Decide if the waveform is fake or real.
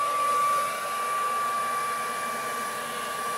real